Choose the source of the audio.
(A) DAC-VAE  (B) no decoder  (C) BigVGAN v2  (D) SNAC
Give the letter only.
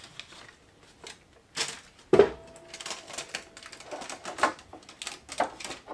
B